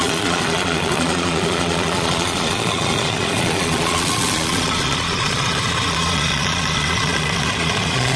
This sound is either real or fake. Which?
fake